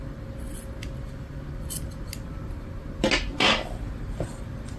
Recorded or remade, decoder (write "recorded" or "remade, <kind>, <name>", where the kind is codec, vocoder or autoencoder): recorded